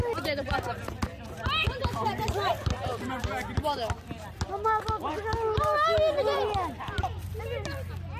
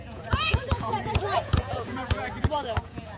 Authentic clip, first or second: first